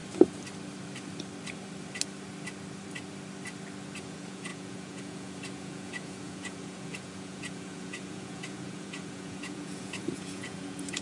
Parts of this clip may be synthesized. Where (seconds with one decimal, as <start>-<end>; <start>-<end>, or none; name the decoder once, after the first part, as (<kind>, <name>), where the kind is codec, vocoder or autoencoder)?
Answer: 4.0-11.0 (vocoder, Vocos)